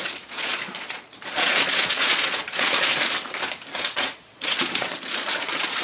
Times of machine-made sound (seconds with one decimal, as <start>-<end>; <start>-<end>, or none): 0.0-2.9; 3.8-5.8